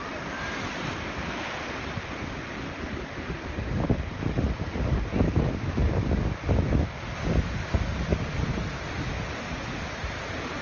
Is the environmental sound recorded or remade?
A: recorded